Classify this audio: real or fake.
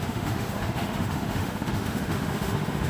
fake